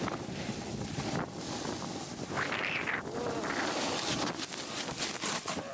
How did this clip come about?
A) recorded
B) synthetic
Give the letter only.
A